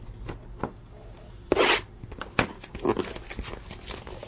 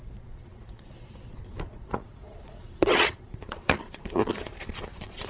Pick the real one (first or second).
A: first